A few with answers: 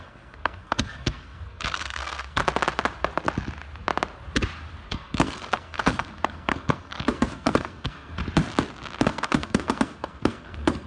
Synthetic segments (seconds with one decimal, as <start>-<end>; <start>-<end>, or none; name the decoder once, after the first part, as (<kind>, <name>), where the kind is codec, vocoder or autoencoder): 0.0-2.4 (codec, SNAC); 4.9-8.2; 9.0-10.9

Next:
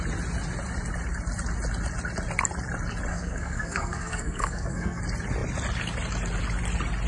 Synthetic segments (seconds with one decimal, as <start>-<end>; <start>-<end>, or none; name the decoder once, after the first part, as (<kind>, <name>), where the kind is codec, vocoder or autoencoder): 3.1-5.0 (codec, SNAC)

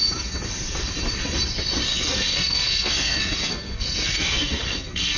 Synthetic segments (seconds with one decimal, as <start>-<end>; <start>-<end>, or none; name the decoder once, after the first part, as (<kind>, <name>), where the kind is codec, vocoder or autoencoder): 1.9-5.2 (codec, SNAC)

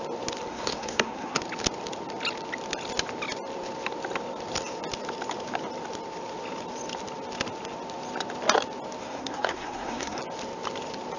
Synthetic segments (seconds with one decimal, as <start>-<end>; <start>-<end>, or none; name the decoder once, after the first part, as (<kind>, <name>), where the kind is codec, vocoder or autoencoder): 0.5-1.4 (codec, SNAC); 9.0-10.2

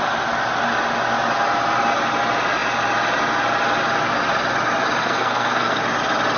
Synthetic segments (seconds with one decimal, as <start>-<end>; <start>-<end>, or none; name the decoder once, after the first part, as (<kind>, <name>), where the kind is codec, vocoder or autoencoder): 5.0-5.8 (codec, SNAC)